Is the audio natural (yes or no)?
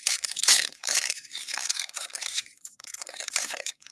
no